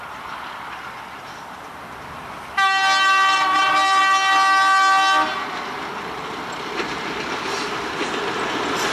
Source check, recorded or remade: recorded